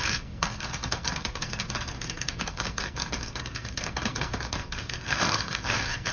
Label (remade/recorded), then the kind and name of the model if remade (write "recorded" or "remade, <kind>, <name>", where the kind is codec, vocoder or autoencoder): remade, codec, SNAC